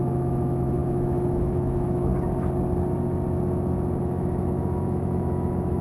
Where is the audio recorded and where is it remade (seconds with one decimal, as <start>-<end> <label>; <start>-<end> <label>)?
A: 0.0-2.1 remade; 2.1-4.0 recorded; 4.0-5.8 remade